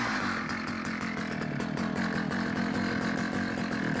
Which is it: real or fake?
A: real